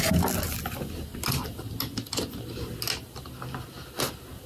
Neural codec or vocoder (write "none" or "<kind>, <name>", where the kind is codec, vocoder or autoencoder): none